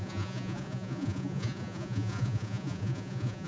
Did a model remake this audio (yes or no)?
yes